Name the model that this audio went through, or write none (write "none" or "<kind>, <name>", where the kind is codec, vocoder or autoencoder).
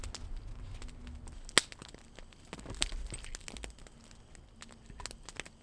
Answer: none